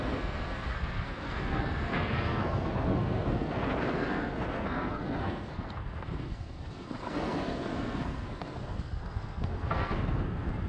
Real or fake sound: fake